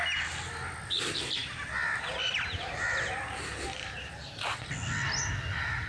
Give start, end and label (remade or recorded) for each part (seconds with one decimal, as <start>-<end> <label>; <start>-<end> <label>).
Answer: 0.0-1.4 recorded; 1.4-4.1 remade; 4.1-5.9 recorded

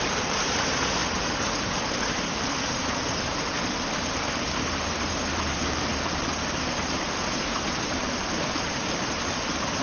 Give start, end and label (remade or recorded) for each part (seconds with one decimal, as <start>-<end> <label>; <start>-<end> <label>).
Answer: 0.0-9.8 remade